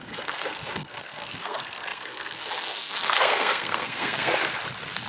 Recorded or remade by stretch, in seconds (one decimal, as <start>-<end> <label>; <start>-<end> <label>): 0.0-4.3 remade; 4.3-5.1 recorded